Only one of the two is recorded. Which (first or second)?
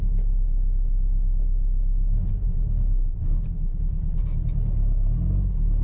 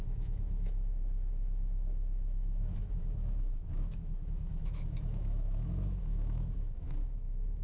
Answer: first